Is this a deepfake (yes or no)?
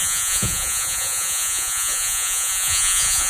yes